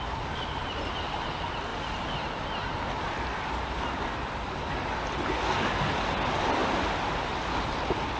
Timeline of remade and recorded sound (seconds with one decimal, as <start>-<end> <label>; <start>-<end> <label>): 0.0-8.2 recorded